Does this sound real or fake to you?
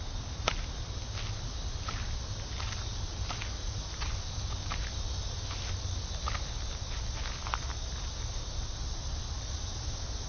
real